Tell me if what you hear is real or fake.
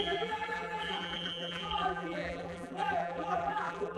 fake